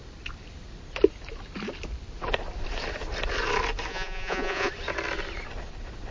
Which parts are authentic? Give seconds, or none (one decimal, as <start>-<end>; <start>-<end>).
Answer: 0.0-3.9; 4.7-6.1